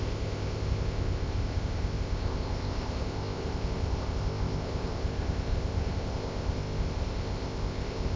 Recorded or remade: remade